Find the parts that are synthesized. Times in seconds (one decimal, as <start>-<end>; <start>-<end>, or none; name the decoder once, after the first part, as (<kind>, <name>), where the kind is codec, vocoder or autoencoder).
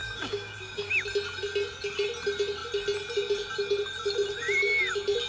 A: 0.0-0.9 (codec, DAC)